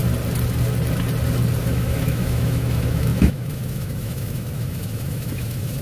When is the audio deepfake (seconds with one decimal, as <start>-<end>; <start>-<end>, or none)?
1.6-5.8